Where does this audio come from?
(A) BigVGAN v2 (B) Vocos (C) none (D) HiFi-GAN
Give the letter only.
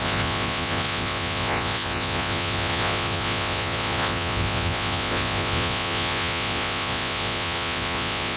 B